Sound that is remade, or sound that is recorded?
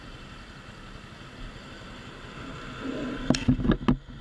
recorded